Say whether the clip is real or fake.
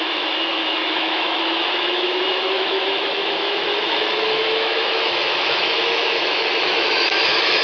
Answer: fake